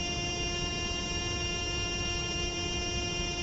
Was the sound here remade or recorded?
remade